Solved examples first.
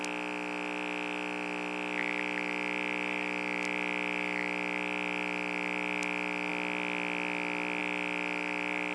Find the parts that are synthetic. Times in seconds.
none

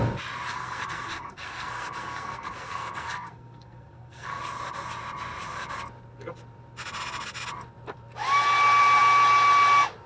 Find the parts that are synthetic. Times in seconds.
0.5-4.4 (codec, SNAC)

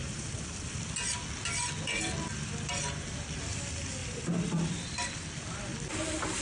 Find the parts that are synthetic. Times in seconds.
0.0-0.8 (vocoder, BigVGAN v2); 4.0-5.1